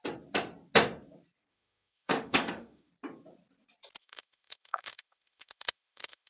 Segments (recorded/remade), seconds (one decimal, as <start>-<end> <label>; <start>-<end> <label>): 0.0-1.5 recorded; 1.5-2.9 remade; 2.9-4.0 recorded; 4.0-6.3 remade